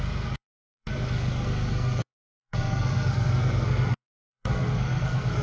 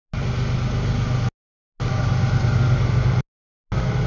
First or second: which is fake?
first